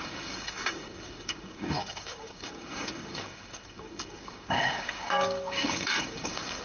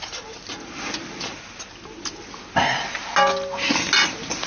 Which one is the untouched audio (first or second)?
second